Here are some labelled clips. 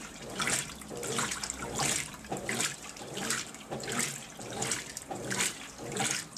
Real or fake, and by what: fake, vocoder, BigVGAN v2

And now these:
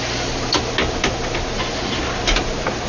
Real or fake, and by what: real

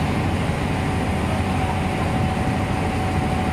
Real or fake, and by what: real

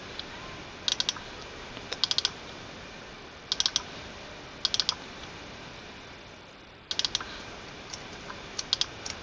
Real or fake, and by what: real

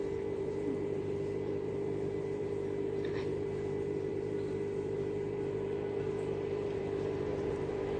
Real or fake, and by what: fake, vocoder, BigVGAN v2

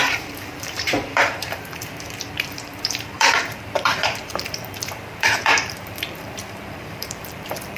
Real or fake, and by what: fake, vocoder, BigVGAN v2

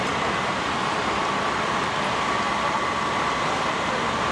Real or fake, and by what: fake, vocoder, BigVGAN v2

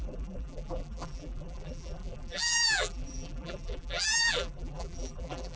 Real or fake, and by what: fake, vocoder, BigVGAN v2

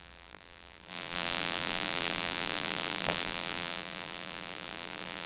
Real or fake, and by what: fake, vocoder, BigVGAN v2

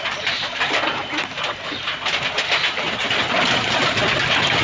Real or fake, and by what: real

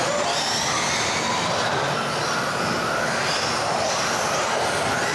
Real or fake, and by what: real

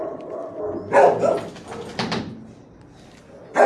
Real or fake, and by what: real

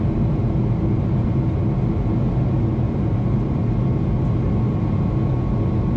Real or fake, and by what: real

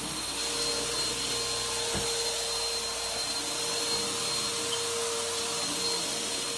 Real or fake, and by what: real